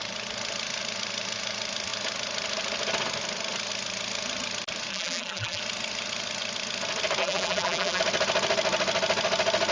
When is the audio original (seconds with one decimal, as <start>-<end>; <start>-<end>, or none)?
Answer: 0.0-4.9; 5.6-7.2; 8.0-9.7